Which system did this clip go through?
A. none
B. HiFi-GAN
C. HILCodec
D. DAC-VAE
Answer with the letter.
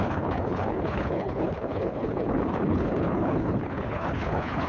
C